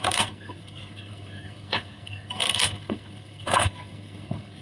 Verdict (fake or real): fake